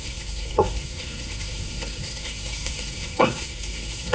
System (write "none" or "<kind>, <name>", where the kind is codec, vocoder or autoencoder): codec, SNAC